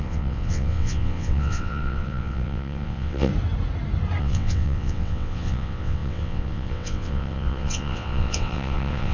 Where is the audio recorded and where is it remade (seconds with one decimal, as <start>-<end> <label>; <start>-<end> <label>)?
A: 0.0-3.3 remade; 3.3-4.2 recorded; 4.2-9.1 remade